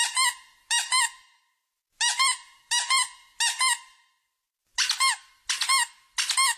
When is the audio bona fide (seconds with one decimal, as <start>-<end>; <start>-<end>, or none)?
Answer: 0.0-6.6

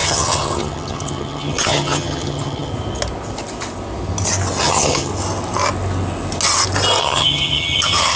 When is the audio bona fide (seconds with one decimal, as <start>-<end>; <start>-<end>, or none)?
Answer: 2.7-4.6; 5.1-7.0

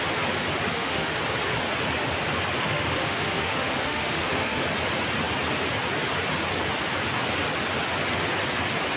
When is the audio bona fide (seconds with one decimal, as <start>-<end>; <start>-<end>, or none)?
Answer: 0.0-0.7; 1.2-2.6; 4.6-9.0

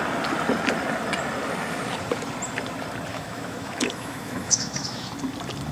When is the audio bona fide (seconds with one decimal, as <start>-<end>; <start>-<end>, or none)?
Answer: 0.0-3.1; 5.1-5.7